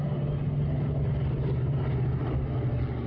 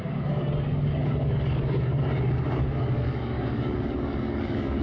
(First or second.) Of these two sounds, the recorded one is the first